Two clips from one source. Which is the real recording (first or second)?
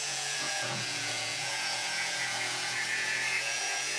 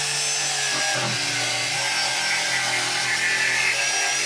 second